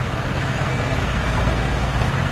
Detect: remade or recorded remade